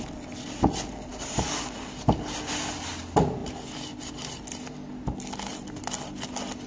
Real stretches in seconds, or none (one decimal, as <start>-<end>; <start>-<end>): 0.0-6.7